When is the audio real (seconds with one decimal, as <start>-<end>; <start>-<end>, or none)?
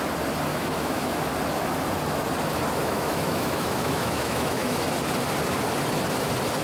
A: 0.0-0.5; 1.3-2.8; 4.8-6.6